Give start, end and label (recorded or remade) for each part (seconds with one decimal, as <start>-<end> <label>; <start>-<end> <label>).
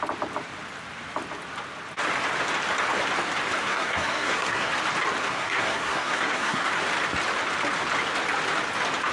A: 0.0-3.6 recorded; 3.6-4.7 remade; 4.7-5.2 recorded; 5.2-6.7 remade; 6.7-9.1 recorded